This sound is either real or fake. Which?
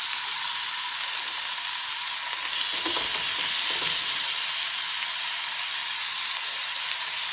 real